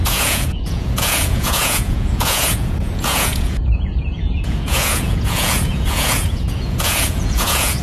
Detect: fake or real fake